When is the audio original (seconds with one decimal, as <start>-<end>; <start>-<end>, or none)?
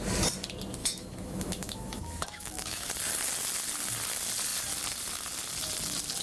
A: 0.0-0.8; 2.9-6.2